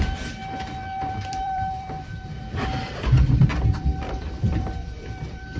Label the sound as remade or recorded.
remade